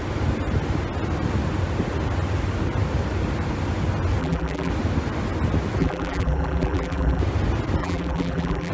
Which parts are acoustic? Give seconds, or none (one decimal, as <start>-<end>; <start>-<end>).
0.0-4.2; 4.7-5.8; 7.2-7.8